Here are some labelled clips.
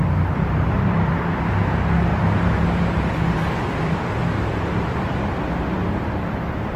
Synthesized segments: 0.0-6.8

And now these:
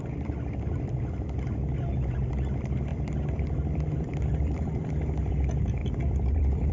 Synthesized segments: 2.9-5.3; 5.8-6.7

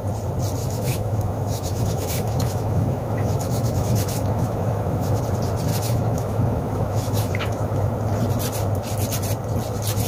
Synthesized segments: 0.6-5.2; 5.7-7.9

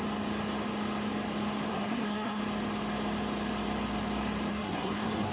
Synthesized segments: 1.7-2.4; 4.5-5.3

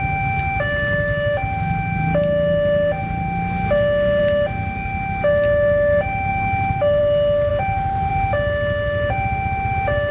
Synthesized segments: none

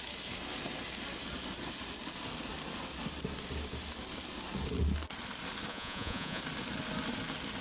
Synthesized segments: 5.7-6.4